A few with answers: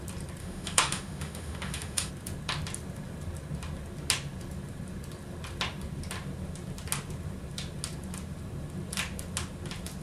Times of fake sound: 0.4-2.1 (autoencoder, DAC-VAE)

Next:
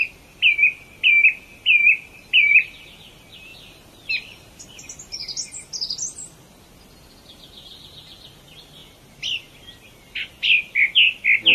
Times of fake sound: none